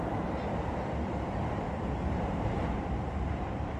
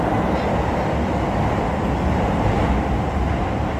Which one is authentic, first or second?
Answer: second